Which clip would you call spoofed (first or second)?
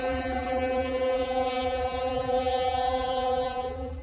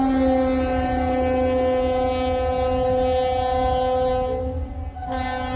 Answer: first